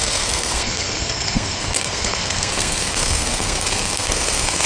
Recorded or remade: remade